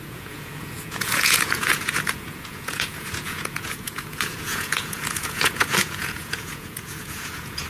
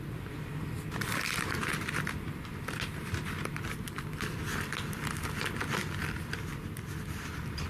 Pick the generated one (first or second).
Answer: first